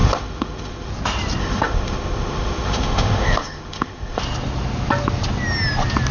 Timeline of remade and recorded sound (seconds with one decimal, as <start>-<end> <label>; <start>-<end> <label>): 0.0-0.9 remade; 0.9-1.4 recorded; 1.4-4.2 remade; 4.2-6.1 recorded